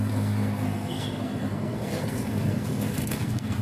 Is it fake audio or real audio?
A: fake